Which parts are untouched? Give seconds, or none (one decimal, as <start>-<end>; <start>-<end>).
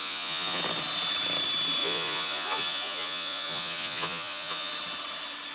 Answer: 0.6-1.8; 4.7-5.5